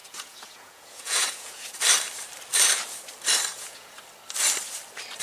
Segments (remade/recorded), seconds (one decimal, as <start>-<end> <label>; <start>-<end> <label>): 0.0-1.8 remade; 1.8-3.5 recorded; 3.5-4.0 remade; 4.0-5.2 recorded